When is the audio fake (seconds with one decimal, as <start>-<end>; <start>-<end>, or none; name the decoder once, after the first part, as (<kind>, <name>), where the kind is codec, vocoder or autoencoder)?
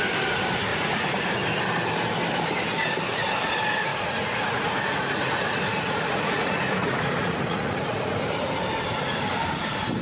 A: 0.7-1.6 (vocoder, Vocos); 3.9-8.3